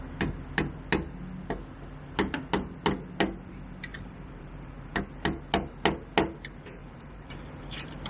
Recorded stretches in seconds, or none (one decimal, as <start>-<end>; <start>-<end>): 0.0-3.9; 5.0-6.8